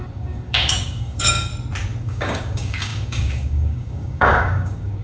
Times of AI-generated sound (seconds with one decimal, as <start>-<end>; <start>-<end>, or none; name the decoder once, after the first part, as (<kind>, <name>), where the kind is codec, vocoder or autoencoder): 0.0-1.5 (codec, DAC); 2.0-5.0